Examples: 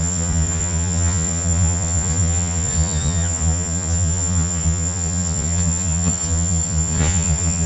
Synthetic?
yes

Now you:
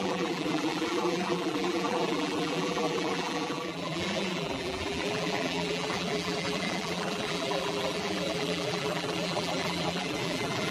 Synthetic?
yes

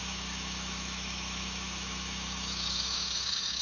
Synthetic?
yes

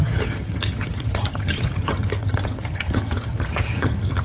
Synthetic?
yes